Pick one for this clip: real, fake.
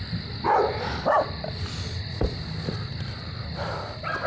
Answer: real